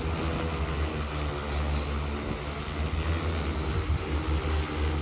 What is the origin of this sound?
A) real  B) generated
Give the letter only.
A